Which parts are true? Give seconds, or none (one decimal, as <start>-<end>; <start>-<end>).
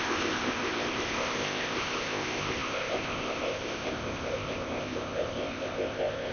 none